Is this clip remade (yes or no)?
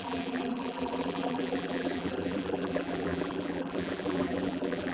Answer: yes